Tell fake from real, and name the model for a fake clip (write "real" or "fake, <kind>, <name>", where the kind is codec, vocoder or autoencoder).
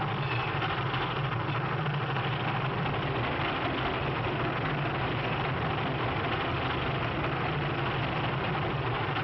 real